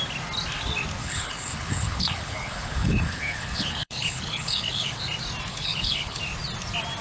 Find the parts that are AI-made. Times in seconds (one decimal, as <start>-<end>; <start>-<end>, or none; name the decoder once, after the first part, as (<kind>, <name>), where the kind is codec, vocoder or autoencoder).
1.0-5.0 (codec, HILCodec); 5.5-6.2